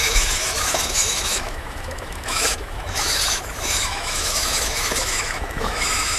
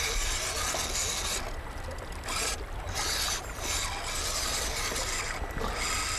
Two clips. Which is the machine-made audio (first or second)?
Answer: first